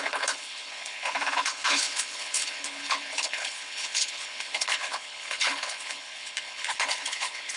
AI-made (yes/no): yes